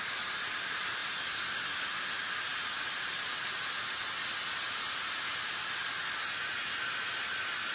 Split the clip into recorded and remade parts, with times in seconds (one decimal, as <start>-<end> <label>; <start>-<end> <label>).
0.0-7.7 recorded